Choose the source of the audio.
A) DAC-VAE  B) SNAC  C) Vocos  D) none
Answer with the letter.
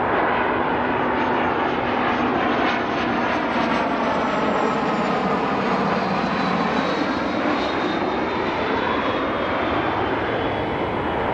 D